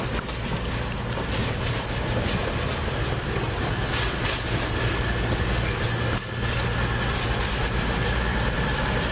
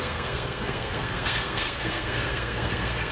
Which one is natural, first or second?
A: first